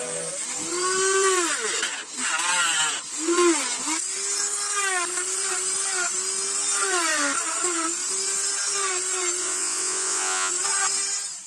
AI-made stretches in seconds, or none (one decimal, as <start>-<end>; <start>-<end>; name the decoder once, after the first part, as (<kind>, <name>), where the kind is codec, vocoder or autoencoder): 9.4-10.5 (vocoder, Vocos)